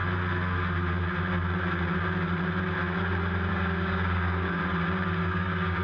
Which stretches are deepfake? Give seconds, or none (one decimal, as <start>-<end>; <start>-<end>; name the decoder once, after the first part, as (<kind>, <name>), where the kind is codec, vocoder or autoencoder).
3.5-4.6 (codec, DAC); 5.2-5.8